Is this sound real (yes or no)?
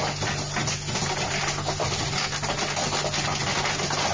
yes